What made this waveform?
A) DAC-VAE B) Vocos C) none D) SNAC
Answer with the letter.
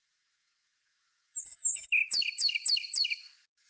A